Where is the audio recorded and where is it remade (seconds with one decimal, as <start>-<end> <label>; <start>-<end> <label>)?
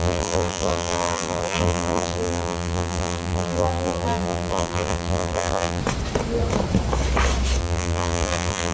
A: 0.0-5.8 remade; 5.8-7.6 recorded; 7.6-8.7 remade